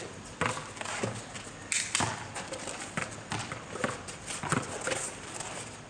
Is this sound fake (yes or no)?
no